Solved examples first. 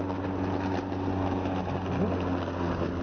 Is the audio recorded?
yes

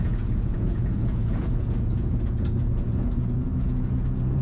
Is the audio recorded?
no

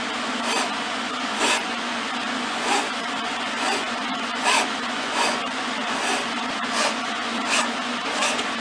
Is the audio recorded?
no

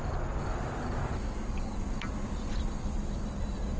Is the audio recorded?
yes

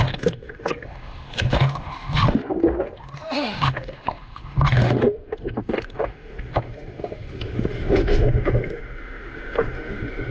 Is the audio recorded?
no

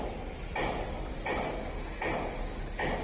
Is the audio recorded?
yes